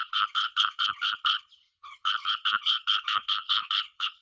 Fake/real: fake